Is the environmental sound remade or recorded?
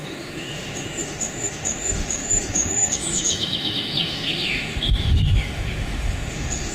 remade